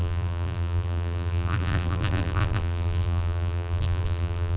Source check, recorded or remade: remade